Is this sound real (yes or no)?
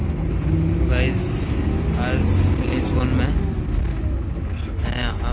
yes